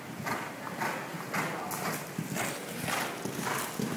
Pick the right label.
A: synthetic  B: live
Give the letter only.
B